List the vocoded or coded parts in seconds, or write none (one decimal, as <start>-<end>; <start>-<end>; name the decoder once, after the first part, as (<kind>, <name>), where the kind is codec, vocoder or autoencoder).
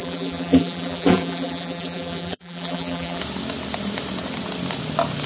0.0-3.2 (vocoder, BigVGAN v2)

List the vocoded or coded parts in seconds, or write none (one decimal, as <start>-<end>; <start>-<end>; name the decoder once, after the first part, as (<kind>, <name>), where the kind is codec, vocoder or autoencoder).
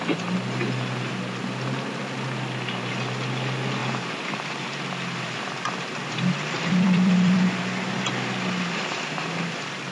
3.8-7.6 (vocoder, BigVGAN v2)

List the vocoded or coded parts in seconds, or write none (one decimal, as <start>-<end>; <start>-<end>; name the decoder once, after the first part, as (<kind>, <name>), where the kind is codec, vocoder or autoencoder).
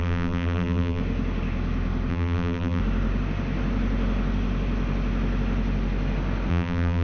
0.0-1.0 (vocoder, BigVGAN v2); 2.1-2.8; 6.5-7.0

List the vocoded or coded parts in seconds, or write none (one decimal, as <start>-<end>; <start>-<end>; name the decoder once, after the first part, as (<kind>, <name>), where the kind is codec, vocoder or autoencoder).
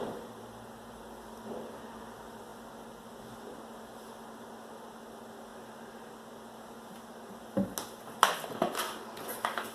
0.0-5.5 (vocoder, BigVGAN v2); 8.0-9.7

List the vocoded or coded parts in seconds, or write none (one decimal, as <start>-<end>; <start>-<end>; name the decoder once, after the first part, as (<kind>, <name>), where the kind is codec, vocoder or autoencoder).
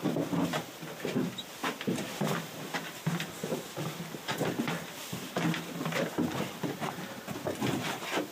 0.0-8.3 (vocoder, BigVGAN v2)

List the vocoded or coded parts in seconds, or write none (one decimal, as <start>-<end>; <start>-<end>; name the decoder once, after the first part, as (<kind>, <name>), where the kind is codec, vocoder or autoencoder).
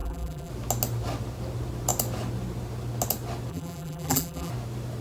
0.0-0.5 (vocoder, BigVGAN v2); 3.5-4.5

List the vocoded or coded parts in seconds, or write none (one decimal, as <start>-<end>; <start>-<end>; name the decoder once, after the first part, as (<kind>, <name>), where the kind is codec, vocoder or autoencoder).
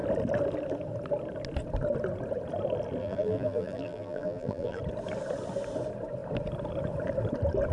3.0-4.8 (vocoder, BigVGAN v2)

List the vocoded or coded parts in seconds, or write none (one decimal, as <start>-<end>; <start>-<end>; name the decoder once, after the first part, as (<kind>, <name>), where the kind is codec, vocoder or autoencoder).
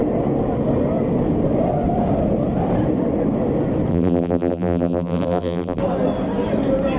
3.9-5.8 (vocoder, BigVGAN v2)